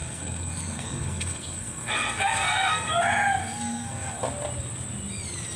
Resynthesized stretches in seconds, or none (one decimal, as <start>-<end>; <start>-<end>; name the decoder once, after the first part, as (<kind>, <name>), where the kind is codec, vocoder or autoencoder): 0.0-2.9 (codec, SNAC); 3.4-4.2